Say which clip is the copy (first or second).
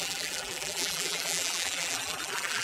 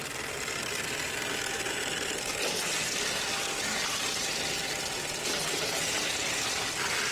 first